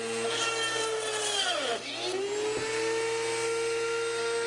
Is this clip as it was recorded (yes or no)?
yes